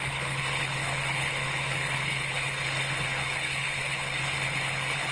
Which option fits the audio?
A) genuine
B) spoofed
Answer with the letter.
B